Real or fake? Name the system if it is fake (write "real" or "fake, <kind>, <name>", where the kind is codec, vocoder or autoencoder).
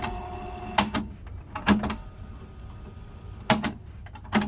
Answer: real